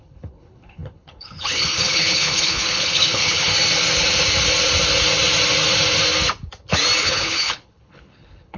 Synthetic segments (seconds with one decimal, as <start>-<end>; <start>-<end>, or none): 0.0-3.5; 7.0-8.6